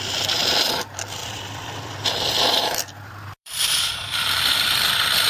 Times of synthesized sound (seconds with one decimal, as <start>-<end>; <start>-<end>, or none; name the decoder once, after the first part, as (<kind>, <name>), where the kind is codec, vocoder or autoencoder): 0.0-5.3 (vocoder, BigVGAN v2)